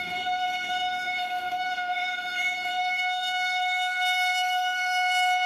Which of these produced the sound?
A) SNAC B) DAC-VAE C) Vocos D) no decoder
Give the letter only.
B